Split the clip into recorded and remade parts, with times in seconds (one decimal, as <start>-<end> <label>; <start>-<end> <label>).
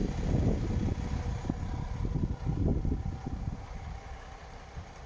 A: 0.0-5.1 recorded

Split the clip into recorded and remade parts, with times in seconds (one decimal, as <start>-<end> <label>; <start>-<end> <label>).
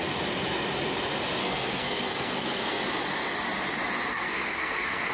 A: 0.0-1.4 recorded; 1.4-2.8 remade; 2.8-4.1 recorded; 4.1-5.1 remade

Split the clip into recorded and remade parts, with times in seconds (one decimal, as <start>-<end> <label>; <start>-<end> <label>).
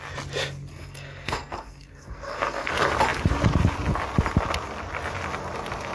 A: 0.0-0.7 recorded; 0.7-2.7 remade; 2.7-5.9 recorded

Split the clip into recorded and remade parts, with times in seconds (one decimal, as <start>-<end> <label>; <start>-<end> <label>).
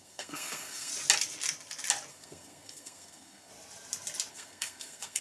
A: 0.0-0.9 remade; 0.9-2.1 recorded; 2.1-3.5 remade; 3.5-4.3 recorded; 4.3-5.2 remade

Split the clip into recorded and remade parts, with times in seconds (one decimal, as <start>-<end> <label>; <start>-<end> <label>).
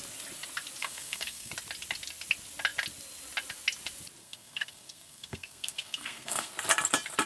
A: 0.0-0.8 recorded; 0.8-1.5 remade; 1.5-4.2 recorded; 4.2-6.5 remade; 6.5-7.3 recorded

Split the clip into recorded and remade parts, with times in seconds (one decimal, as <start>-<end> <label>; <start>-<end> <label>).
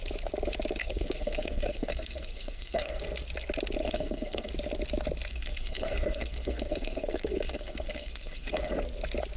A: 0.0-0.8 recorded; 0.8-3.0 remade; 3.0-3.8 recorded; 3.8-4.5 remade; 4.5-5.3 recorded; 5.3-8.7 remade; 8.7-9.4 recorded